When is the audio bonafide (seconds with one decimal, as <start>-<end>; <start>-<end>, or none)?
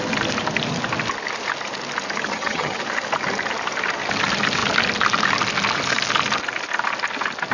0.0-2.3; 2.8-7.5